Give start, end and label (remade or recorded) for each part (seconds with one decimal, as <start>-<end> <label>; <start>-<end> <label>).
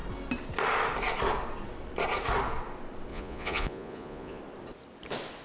0.0-3.1 recorded; 3.1-4.4 remade; 4.4-5.4 recorded